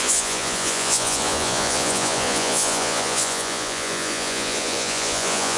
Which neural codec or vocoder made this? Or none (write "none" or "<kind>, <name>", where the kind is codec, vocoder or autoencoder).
vocoder, Vocos